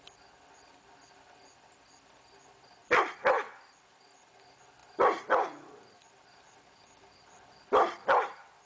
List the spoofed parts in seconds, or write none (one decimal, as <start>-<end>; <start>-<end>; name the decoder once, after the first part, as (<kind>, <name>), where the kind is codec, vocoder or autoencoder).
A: none